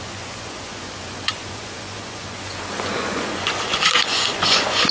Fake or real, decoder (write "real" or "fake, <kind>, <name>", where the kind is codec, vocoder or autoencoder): fake, vocoder, Vocos